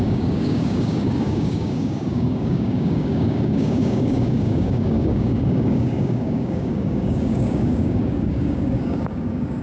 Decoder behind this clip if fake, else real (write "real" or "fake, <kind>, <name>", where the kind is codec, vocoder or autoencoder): fake, codec, DAC